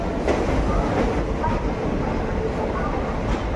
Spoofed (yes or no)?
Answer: no